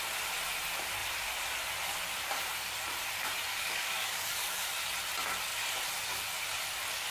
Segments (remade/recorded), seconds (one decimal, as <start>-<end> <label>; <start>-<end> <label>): 0.0-3.5 recorded; 3.5-4.7 remade; 4.7-7.1 recorded